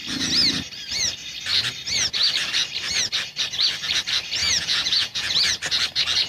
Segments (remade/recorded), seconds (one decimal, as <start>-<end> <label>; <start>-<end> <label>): 0.0-4.4 recorded; 4.4-5.3 remade; 5.3-6.3 recorded